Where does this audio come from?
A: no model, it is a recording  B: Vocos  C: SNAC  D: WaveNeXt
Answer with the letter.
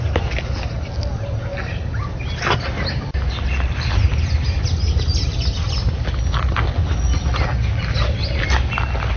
A